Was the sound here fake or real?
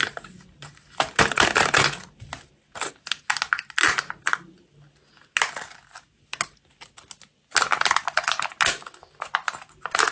real